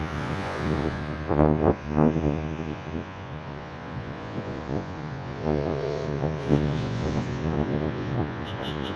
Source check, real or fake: fake